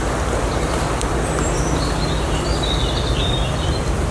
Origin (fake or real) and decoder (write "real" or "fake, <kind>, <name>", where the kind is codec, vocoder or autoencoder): fake, vocoder, BigVGAN v2